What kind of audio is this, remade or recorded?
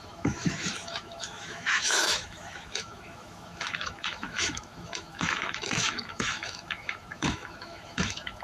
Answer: remade